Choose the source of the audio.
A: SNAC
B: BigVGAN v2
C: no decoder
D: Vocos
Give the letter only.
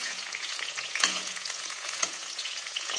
D